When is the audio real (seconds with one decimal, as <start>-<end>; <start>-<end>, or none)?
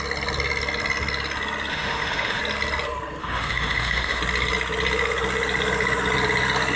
0.0-1.7; 2.4-3.2; 4.2-6.8